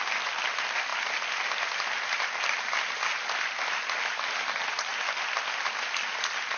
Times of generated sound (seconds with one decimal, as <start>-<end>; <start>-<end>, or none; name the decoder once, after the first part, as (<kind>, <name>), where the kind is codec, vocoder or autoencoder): none

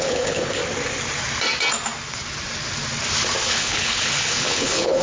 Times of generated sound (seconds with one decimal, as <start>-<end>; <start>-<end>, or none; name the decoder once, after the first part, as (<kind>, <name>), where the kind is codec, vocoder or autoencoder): 0.0-0.6 (codec, HILCodec); 3.5-5.0